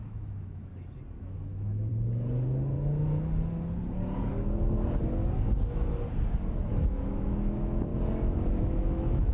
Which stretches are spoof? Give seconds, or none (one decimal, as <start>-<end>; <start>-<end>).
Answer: 0.0-0.7; 1.2-1.9; 6.8-7.9; 8.6-9.3